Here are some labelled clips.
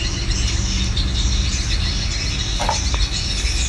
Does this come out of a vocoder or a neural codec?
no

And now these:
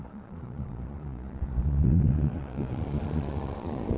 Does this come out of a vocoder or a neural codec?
yes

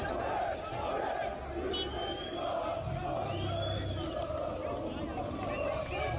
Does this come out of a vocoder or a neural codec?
no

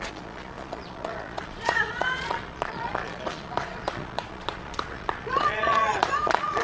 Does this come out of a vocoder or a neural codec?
yes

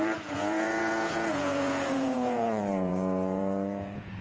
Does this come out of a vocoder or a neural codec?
yes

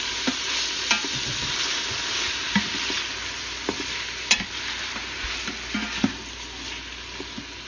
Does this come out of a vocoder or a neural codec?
no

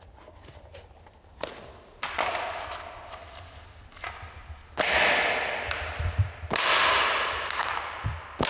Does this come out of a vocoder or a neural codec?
no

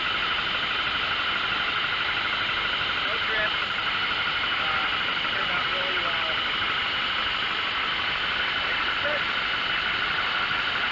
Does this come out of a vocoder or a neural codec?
no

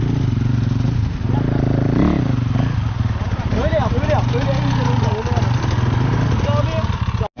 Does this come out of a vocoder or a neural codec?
no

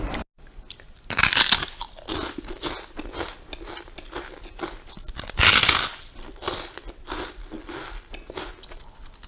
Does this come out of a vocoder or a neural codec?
no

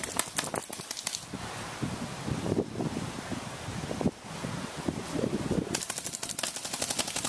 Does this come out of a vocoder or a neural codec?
no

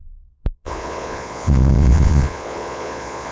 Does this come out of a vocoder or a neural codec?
yes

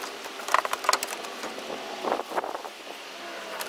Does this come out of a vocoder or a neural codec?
no